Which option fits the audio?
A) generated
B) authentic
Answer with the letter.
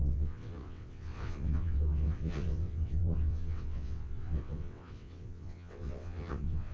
A